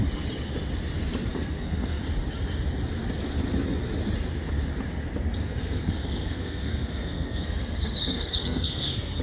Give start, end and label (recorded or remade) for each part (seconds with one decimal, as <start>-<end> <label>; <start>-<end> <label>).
0.0-1.3 recorded; 1.3-2.0 remade; 2.0-5.4 recorded; 5.4-9.2 remade